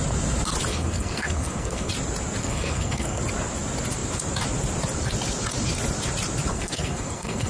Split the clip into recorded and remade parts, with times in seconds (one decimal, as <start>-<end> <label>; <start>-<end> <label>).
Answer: 0.0-0.7 recorded; 0.7-1.9 remade; 1.9-2.4 recorded; 2.4-3.2 remade; 3.2-6.5 recorded; 6.5-7.5 remade